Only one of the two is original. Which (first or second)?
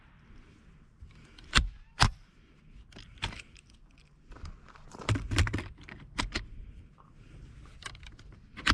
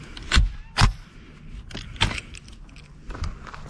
second